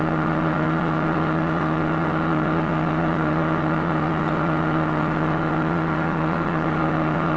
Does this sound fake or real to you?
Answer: fake